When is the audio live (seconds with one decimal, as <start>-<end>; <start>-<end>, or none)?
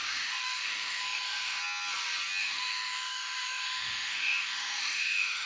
1.6-2.4